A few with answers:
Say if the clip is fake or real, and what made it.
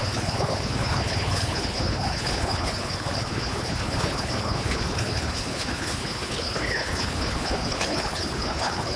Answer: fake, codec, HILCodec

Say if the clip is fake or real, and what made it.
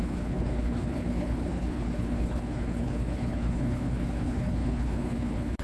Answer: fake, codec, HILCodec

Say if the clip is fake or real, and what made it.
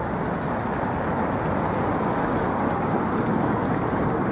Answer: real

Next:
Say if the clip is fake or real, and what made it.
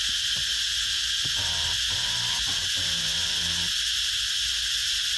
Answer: real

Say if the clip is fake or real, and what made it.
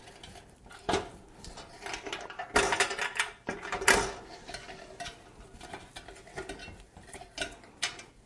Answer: real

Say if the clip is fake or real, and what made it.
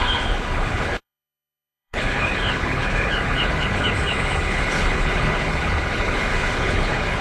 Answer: fake, codec, HILCodec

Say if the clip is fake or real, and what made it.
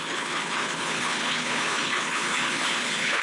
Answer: fake, codec, HILCodec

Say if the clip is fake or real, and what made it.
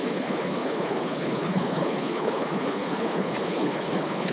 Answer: fake, codec, HILCodec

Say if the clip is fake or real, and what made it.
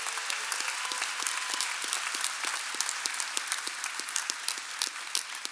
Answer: real